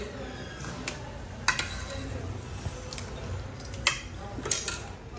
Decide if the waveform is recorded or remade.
recorded